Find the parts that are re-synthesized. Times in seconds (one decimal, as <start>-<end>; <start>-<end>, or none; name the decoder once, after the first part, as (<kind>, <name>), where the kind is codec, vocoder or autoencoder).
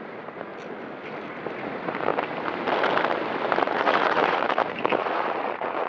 0.0-0.5 (vocoder, Vocos); 1.6-2.1; 3.6-5.9